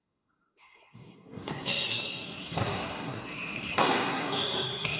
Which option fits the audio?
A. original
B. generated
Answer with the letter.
B